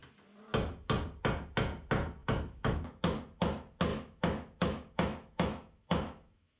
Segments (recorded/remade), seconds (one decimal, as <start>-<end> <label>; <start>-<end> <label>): 0.0-2.2 recorded; 2.2-3.0 remade; 3.0-3.9 recorded; 3.9-6.6 remade